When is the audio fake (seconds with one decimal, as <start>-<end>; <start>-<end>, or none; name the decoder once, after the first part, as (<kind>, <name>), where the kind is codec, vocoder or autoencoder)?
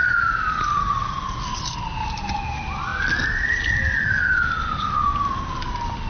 none